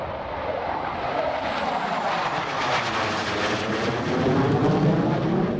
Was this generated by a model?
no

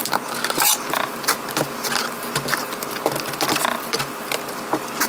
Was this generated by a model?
no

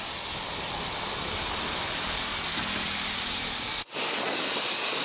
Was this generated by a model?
no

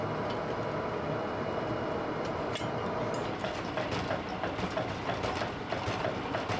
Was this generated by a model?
no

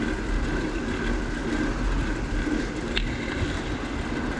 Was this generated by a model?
no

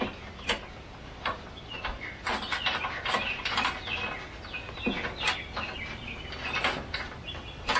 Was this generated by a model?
no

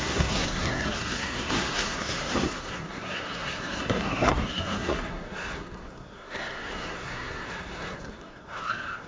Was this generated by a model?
yes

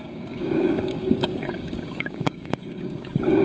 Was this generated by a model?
yes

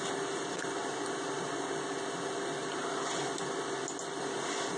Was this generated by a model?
no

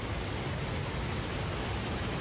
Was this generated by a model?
no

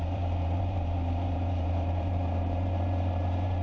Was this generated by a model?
yes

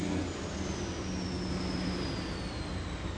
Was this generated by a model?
no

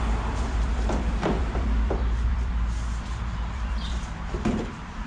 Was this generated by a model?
yes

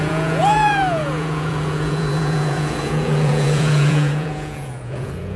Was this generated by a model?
yes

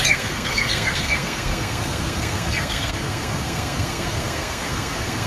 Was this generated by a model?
yes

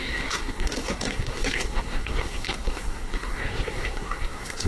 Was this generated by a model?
yes